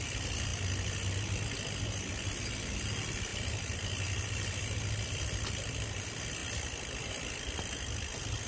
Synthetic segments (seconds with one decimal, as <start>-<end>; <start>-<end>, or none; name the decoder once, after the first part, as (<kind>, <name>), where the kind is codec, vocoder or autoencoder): none